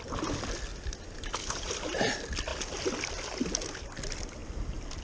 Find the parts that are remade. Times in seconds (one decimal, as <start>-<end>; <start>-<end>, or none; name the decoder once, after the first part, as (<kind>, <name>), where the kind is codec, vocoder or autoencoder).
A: 0.7-1.7 (vocoder, BigVGAN v2)